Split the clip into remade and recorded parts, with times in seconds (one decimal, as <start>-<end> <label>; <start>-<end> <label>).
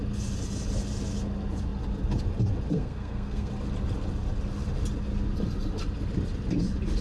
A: 0.0-2.7 recorded; 2.7-3.5 remade; 3.5-7.0 recorded